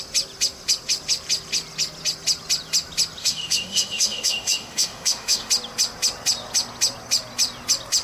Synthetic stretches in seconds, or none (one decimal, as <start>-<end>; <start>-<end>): 3.2-5.5